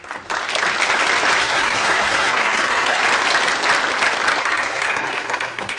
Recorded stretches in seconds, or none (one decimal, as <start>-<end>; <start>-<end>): 0.0-1.4; 3.0-4.4